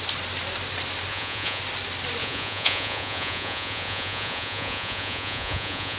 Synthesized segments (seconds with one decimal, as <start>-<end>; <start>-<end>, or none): 1.1-1.6; 2.2-6.0